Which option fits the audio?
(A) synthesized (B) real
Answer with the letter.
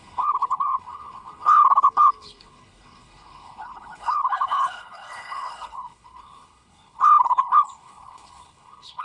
A